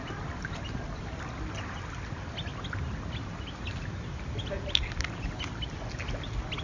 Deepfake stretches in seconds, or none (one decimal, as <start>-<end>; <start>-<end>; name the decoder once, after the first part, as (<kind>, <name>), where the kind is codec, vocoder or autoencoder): none